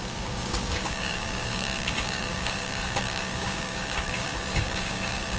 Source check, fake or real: fake